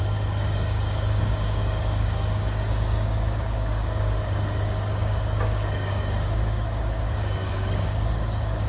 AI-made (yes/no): yes